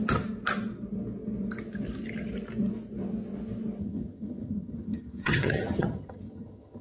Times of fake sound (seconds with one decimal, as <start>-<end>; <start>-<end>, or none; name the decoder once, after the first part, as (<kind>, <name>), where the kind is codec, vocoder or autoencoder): 3.8-6.8 (vocoder, HiFi-GAN)